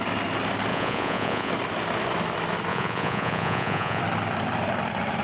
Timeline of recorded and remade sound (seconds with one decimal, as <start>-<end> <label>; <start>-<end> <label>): 0.0-0.7 recorded; 0.7-1.5 remade; 1.5-2.7 recorded; 2.7-4.0 remade; 4.0-5.2 recorded